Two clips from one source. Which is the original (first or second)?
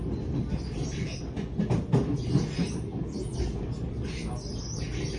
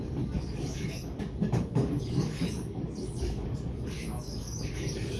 first